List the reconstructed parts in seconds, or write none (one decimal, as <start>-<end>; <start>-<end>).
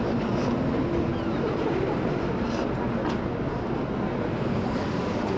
none